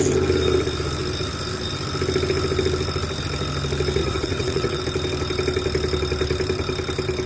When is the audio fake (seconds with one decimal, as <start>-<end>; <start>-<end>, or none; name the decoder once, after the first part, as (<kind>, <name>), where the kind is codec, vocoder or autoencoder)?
4.0-4.8 (vocoder, WaveNeXt)